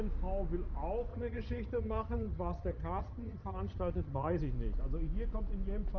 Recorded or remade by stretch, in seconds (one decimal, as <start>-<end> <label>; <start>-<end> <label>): 0.0-1.1 recorded; 1.1-4.4 remade; 4.4-6.0 recorded